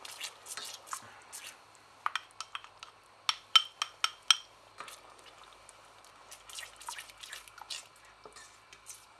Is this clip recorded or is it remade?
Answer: recorded